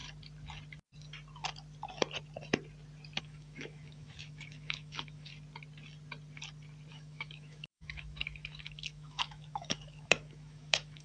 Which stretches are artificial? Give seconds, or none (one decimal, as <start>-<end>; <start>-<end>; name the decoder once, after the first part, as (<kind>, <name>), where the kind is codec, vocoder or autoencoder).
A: 3.2-5.3 (autoencoder, DAC-VAE); 6.9-11.0